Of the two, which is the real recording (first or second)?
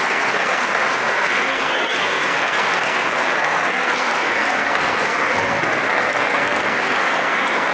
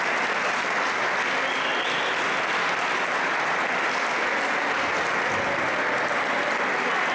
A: second